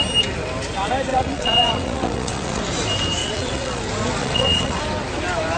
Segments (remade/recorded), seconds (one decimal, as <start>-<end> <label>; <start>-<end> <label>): 0.0-1.1 recorded; 1.1-2.6 remade; 2.6-3.2 recorded; 3.2-3.8 remade; 3.8-4.2 recorded; 4.2-4.8 remade; 4.8-5.6 recorded